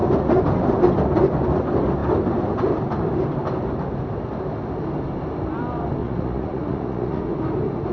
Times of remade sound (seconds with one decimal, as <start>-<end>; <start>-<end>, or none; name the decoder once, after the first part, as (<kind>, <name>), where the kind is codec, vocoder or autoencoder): 6.0-7.2 (vocoder, Vocos)